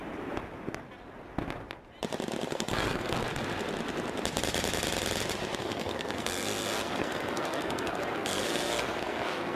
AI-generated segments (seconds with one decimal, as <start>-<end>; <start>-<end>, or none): 2.5-3.2; 5.6-9.6